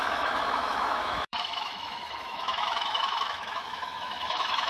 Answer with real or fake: fake